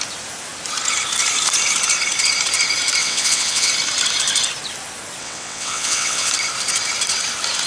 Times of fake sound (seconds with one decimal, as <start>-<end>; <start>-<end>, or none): 3.0-3.7; 5.2-6.3